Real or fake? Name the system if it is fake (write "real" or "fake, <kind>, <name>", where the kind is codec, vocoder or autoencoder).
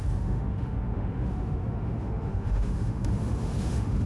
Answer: fake, autoencoder, DAC-VAE